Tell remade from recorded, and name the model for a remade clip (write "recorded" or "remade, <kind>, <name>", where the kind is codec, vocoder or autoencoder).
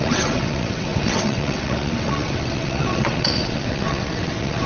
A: remade, vocoder, WaveNeXt